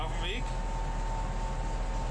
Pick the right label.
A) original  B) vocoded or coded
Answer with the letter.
A